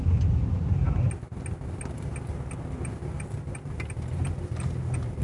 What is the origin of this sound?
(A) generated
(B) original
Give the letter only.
B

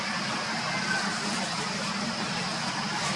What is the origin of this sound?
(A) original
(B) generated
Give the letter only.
A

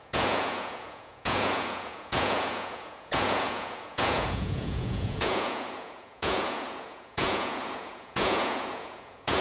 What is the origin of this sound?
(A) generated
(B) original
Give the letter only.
A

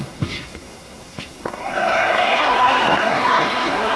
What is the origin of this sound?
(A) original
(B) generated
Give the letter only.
B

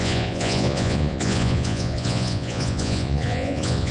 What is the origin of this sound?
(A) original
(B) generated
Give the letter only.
B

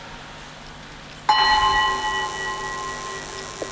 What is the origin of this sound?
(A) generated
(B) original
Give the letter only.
B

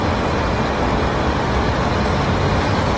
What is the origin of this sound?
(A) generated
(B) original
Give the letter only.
B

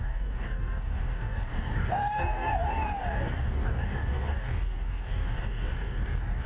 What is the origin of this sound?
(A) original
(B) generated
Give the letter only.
B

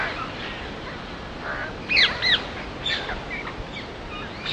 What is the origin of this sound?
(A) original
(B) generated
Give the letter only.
A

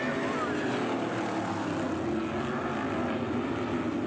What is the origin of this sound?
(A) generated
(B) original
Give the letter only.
B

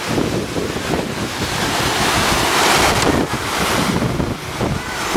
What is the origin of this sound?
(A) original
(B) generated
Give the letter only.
A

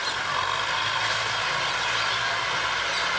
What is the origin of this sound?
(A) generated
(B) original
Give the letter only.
B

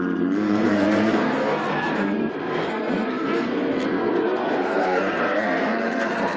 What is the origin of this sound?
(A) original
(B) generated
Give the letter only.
B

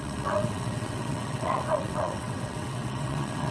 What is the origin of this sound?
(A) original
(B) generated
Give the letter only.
B